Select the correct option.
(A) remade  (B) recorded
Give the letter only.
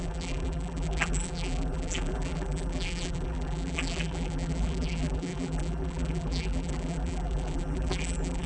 A